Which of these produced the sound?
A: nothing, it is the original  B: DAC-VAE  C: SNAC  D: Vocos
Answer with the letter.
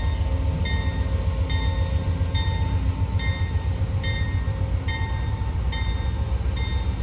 A